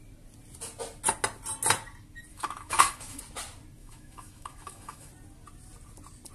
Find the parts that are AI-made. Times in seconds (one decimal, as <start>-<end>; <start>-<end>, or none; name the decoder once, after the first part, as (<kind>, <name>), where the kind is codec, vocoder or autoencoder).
2.3-3.2 (autoencoder, DAC-VAE); 3.8-5.1